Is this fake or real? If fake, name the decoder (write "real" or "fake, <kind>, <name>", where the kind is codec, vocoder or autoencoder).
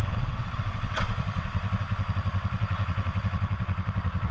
fake, vocoder, WaveNeXt